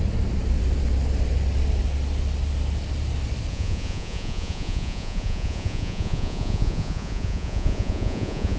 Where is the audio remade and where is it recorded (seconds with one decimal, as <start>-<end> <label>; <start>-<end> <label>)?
0.0-3.5 recorded; 3.5-8.6 remade